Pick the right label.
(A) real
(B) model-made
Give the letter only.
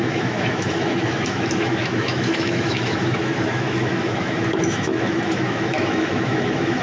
B